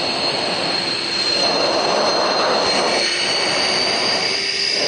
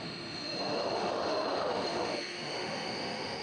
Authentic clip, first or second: first